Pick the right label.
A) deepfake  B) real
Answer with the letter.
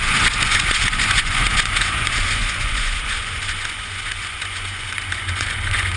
A